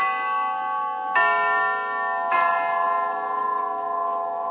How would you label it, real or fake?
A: real